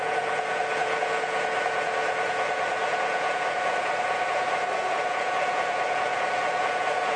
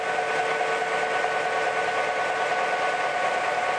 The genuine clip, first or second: second